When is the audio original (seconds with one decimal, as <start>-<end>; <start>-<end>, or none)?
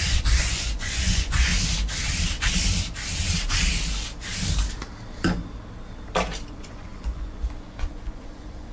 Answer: 1.5-6.5